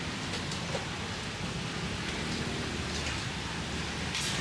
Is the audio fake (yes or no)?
no